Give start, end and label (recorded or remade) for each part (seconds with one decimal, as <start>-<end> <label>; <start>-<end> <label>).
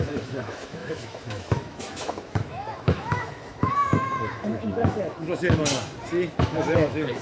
0.0-5.6 remade; 5.6-6.4 recorded; 6.4-7.2 remade